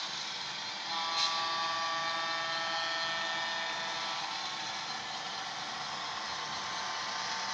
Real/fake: real